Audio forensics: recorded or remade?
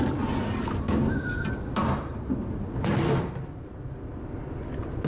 recorded